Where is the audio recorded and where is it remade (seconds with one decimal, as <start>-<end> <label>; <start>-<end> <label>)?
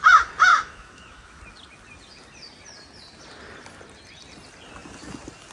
0.0-0.5 recorded; 0.5-1.4 remade; 1.4-5.5 recorded